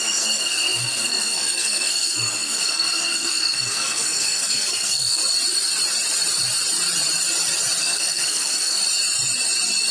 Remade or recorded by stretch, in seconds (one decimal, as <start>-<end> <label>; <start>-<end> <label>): 0.0-5.2 remade; 5.2-7.8 recorded; 7.8-8.8 remade; 8.8-9.9 recorded